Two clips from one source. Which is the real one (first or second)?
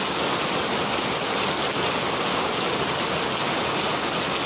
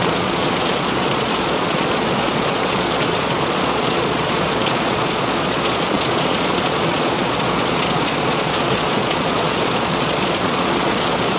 first